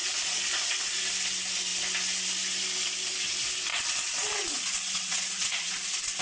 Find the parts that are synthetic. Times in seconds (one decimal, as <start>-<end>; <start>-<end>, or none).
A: 0.0-1.0; 3.7-6.2